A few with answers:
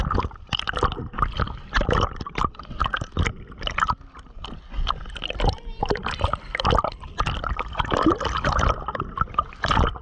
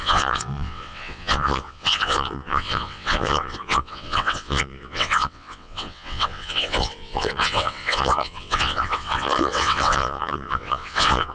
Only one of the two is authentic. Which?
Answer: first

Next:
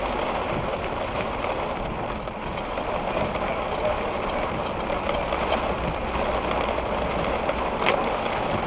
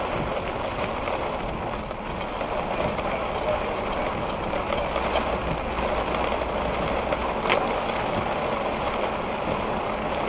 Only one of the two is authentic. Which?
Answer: second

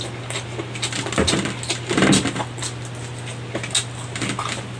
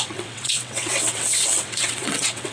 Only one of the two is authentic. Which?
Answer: first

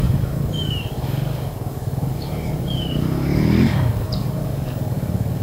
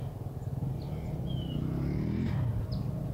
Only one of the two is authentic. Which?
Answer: second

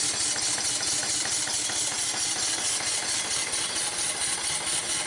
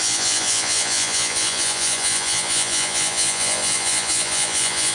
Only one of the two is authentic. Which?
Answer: first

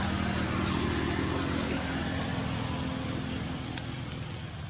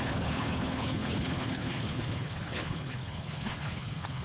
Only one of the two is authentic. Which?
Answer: first